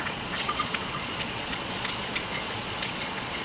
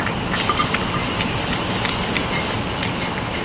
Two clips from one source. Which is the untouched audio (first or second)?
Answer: second